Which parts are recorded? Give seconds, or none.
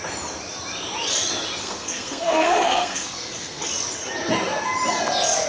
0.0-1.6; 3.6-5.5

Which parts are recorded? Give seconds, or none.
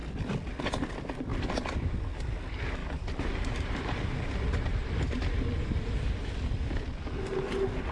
0.0-2.8; 6.6-7.9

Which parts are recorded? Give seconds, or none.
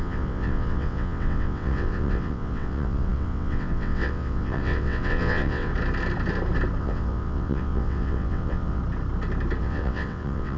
5.7-6.8; 8.8-9.6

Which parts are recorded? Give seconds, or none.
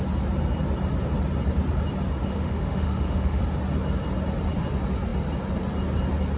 0.0-2.3; 3.4-6.4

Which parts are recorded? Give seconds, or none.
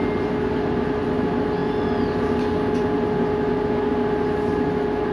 0.0-5.1